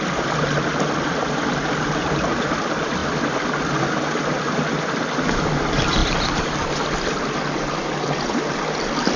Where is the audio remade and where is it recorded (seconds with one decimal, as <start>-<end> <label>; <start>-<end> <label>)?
0.0-9.2 recorded